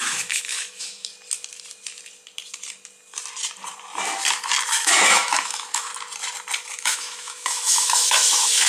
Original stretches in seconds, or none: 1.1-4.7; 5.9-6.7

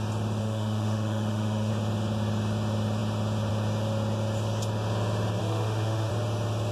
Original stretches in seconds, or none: 0.0-0.4; 1.7-5.4; 6.1-6.7

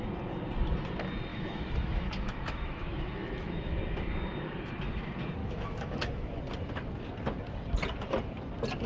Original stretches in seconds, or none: 0.0-1.3; 3.8-5.4; 6.4-8.9

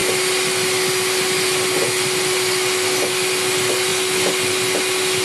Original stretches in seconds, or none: 0.0-5.2

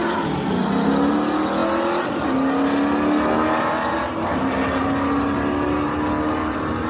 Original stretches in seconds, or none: 0.0-6.9

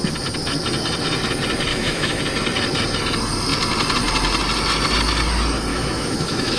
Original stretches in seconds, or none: 0.0-1.7; 2.2-5.7

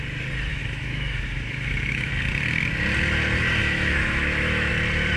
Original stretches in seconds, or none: 0.0-0.5; 2.1-3.6; 4.7-5.2